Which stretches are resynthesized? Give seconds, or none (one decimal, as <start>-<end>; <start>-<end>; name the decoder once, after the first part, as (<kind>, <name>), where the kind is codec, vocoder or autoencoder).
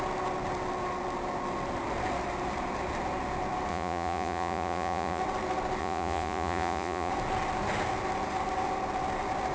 3.7-5.2 (vocoder, Vocos); 5.8-7.1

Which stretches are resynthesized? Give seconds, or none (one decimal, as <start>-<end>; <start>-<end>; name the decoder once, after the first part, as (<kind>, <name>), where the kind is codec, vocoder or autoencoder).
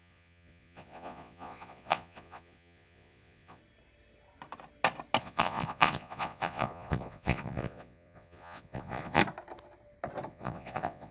0.0-3.6 (vocoder, Vocos); 5.2-9.2; 10.3-11.1